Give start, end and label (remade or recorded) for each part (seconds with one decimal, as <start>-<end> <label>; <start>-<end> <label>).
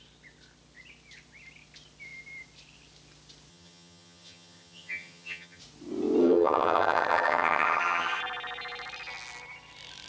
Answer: 0.0-3.5 recorded; 3.5-5.6 remade; 5.6-6.2 recorded; 6.2-8.2 remade; 8.2-10.1 recorded